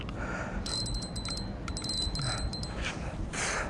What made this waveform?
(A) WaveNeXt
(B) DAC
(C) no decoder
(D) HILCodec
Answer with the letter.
C